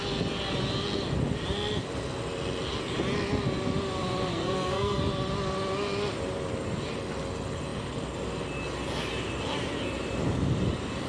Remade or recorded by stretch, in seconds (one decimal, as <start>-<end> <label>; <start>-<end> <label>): 0.0-4.3 recorded; 4.3-5.0 remade; 5.0-11.1 recorded